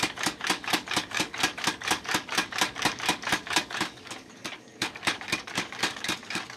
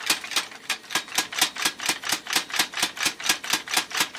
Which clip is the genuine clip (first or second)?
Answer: second